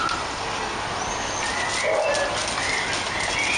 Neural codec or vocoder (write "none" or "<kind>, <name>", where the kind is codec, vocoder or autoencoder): none